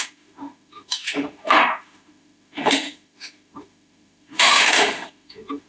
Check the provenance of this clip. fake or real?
fake